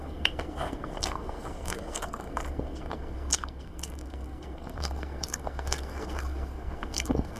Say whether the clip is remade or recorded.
remade